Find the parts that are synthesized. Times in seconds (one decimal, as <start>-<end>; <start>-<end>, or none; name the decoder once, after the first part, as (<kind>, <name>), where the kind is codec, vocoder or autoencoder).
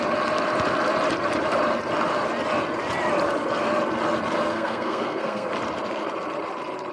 4.5-5.5 (codec, SNAC)